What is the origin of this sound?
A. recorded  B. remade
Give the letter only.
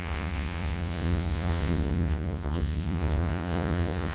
B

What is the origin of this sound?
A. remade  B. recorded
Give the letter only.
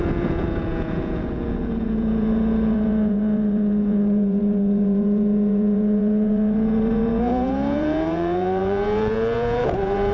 A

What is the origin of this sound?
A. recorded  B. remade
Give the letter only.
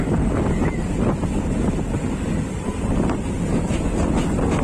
A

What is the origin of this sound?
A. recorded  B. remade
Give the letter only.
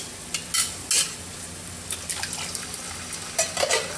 A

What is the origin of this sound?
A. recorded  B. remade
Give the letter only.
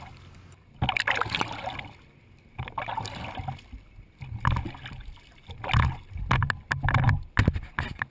A